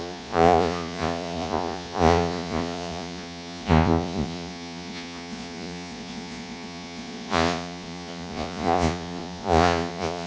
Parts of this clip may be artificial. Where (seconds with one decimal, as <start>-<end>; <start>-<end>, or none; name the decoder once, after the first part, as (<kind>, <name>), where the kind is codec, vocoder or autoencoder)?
0.0-10.3 (vocoder, Vocos)